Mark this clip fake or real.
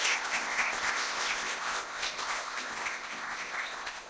fake